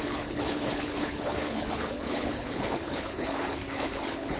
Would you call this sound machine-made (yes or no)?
yes